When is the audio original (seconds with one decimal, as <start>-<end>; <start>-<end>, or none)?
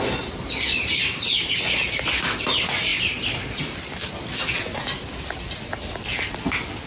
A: 0.0-6.9